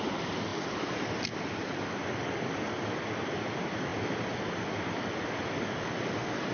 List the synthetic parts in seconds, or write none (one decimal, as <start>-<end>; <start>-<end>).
none